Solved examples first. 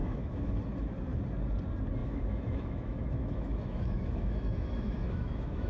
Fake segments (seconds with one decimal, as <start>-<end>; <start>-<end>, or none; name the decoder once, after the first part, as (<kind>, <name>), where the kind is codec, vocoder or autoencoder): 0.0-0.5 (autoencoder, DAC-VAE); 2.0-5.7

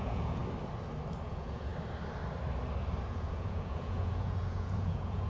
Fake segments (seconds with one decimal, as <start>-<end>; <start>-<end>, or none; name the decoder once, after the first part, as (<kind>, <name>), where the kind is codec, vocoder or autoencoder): 0.0-0.4 (vocoder, Vocos); 1.2-1.7; 3.1-5.3

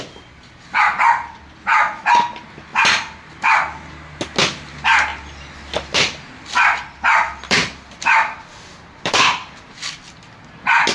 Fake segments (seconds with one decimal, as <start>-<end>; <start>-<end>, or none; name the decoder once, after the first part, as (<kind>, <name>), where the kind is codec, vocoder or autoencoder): 5.1-10.1 (vocoder, BigVGAN v2)

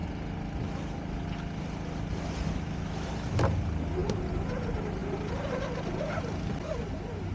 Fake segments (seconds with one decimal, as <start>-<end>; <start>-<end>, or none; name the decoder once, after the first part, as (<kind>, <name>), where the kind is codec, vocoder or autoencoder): none

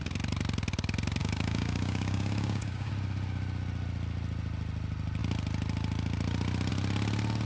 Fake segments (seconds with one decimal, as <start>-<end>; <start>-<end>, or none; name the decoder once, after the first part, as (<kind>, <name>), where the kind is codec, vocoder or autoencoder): 1.2-2.9 (codec, DAC)

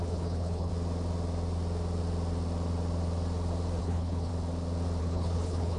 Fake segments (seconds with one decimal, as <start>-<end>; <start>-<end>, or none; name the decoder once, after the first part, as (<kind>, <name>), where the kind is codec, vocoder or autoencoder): 0.0-0.7 (codec, HILCodec); 3.8-4.3; 5.0-5.8

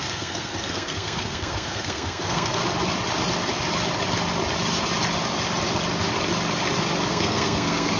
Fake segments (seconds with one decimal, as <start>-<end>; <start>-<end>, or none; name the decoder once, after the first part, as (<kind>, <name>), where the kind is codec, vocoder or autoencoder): 0.0-2.6 (codec, SNAC); 7.1-8.0

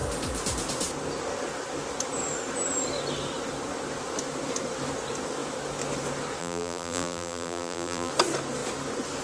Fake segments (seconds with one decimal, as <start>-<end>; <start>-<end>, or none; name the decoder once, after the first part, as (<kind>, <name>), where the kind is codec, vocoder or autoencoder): 6.4-8.1 (vocoder, BigVGAN v2)